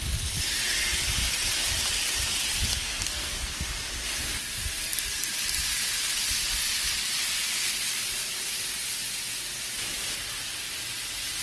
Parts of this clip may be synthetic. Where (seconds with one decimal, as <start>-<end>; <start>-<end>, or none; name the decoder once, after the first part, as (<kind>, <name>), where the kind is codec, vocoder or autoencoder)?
2.7-3.6 (codec, SNAC)